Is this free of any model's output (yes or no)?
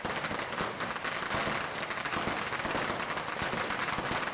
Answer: yes